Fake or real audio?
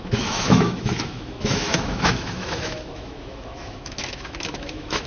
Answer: fake